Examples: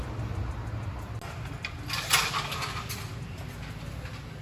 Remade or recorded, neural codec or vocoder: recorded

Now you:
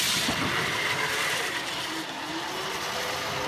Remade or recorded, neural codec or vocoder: recorded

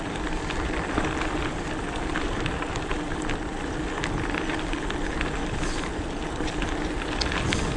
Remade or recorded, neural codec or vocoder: recorded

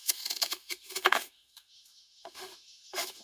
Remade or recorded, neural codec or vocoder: remade, autoencoder, DAC-VAE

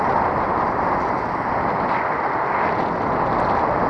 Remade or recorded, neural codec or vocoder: recorded